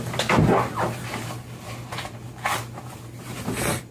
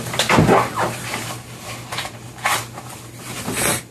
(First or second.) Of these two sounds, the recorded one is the first